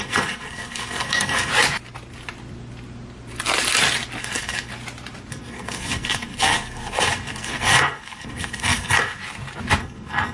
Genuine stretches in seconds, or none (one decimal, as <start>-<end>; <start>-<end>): 1.5-4.2; 4.7-5.3; 9.2-9.8

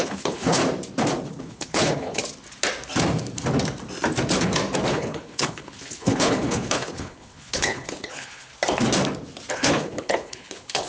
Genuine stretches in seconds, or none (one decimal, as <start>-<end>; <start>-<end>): 0.6-1.4; 2.2-4.9; 8.5-9.5

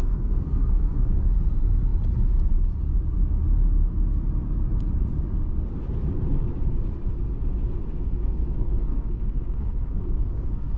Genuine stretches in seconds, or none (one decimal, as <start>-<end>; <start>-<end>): 1.4-8.1

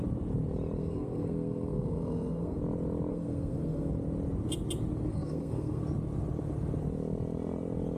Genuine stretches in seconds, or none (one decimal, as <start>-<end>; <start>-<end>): 0.0-0.8; 2.6-3.1; 3.9-5.1; 5.8-8.0

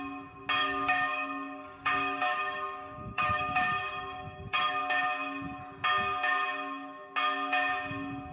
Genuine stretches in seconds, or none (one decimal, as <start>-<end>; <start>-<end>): 0.0-0.6; 4.8-8.3

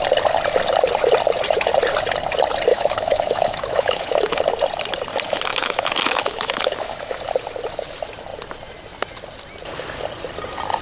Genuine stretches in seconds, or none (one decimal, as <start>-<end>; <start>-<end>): 0.0-2.7; 4.4-5.5; 7.2-10.8

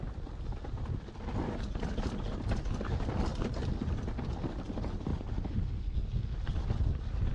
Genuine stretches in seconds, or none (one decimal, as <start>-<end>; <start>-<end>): 0.0-7.3

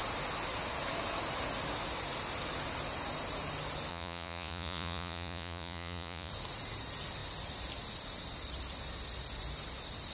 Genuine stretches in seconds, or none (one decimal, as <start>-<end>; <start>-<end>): 0.0-3.9; 6.3-10.1